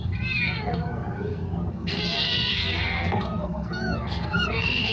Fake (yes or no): yes